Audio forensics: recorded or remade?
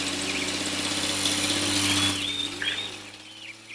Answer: recorded